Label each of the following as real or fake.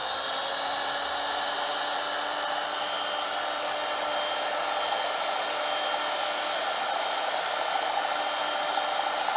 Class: real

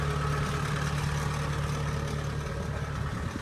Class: real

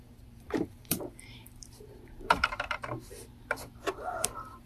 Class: fake